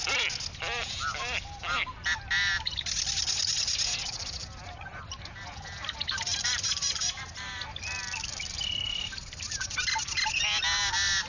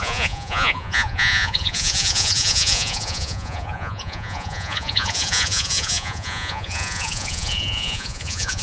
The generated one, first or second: second